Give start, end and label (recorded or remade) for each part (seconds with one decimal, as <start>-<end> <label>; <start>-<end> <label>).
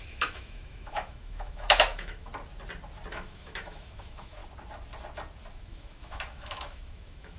0.0-2.3 remade; 2.3-3.1 recorded; 3.1-4.4 remade; 4.4-5.5 recorded; 5.5-7.4 remade